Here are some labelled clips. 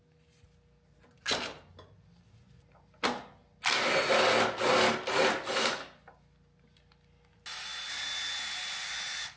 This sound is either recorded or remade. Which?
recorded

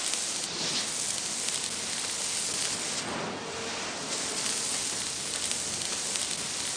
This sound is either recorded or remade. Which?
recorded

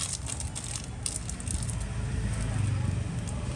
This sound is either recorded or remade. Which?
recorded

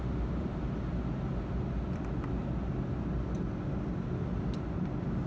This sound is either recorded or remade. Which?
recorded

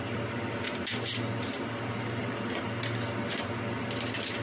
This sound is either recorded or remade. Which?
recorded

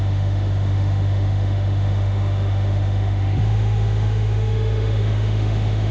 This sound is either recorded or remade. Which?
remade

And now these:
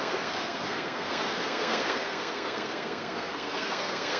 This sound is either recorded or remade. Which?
remade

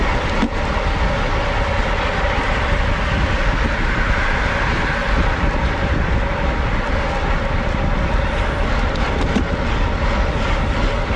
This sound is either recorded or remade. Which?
recorded